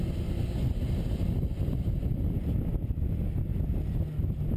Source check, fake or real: real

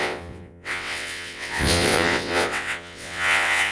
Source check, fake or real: fake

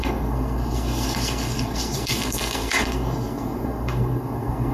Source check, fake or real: fake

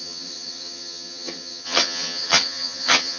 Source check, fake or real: fake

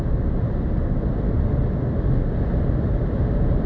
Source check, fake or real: real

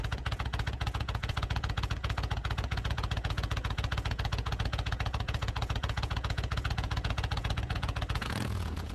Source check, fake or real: fake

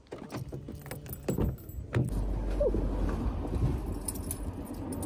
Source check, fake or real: real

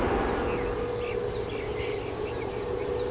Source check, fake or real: real